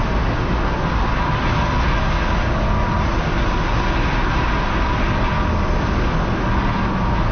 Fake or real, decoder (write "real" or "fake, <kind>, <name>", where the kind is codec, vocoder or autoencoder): real